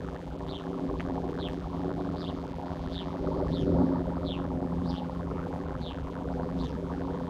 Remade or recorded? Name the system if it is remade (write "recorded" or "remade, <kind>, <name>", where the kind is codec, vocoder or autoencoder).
remade, vocoder, BigVGAN v2